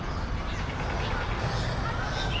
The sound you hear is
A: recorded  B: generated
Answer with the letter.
A